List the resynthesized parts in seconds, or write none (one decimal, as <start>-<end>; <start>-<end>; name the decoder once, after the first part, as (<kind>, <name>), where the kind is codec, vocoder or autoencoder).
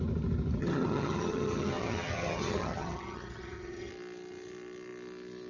0.6-3.9 (vocoder, HiFi-GAN)